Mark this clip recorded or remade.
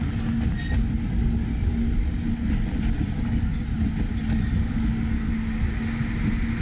recorded